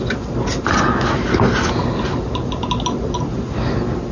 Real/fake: real